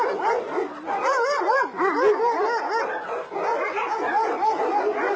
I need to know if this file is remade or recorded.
recorded